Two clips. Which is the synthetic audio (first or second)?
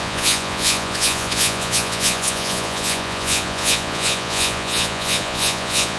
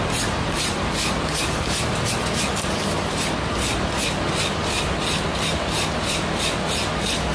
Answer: first